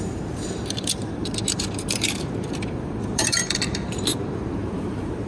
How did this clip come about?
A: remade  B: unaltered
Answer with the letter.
A